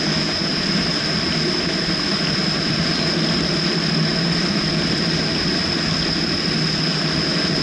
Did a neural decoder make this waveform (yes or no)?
no